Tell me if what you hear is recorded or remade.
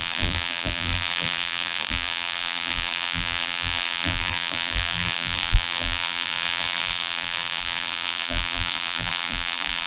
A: remade